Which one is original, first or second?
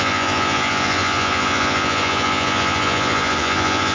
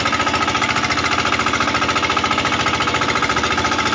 second